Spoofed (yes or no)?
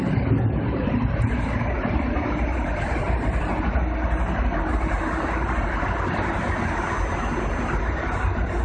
no